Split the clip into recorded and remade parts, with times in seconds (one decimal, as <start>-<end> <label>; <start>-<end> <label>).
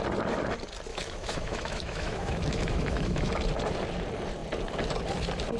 0.0-0.9 recorded; 0.9-3.3 remade; 3.3-5.6 recorded